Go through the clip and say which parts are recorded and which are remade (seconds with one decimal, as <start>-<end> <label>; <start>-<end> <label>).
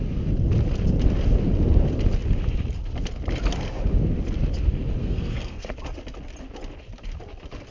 0.0-5.0 recorded; 5.0-5.7 remade; 5.7-7.7 recorded